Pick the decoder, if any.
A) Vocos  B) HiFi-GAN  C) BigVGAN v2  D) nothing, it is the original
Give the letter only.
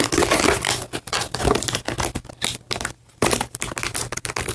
D